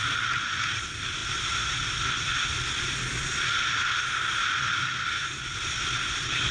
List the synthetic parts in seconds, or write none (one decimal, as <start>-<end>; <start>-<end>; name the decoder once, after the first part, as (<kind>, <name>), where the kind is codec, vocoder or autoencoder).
none

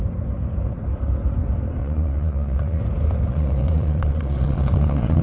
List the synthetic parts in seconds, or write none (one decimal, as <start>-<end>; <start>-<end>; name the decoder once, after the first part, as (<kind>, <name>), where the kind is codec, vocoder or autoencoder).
1.8-2.8 (vocoder, Vocos); 3.3-5.2

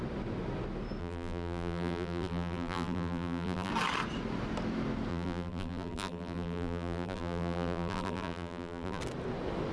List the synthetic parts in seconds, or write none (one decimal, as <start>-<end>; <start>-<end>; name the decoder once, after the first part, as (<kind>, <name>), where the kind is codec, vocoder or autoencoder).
1.0-3.7 (vocoder, BigVGAN v2); 5.1-9.0

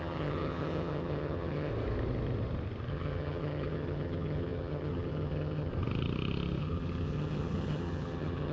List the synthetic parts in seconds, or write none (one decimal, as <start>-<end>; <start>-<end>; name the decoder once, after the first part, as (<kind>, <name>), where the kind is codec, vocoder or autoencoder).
0.0-1.7 (vocoder, HiFi-GAN); 2.9-5.7; 6.6-8.5

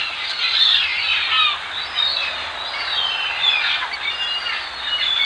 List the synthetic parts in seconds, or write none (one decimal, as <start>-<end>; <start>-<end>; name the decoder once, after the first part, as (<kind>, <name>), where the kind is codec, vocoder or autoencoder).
none